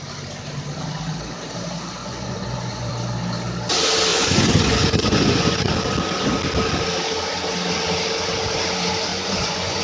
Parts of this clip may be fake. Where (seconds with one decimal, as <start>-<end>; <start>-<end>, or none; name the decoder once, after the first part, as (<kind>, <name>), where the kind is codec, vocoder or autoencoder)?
2.0-2.9 (vocoder, Vocos); 4.1-5.7; 9.1-9.8